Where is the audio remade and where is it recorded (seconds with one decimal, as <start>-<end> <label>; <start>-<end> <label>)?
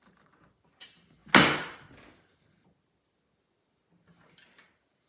0.0-1.2 remade; 1.2-4.3 recorded; 4.3-5.1 remade